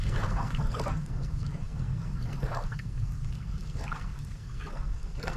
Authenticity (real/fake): fake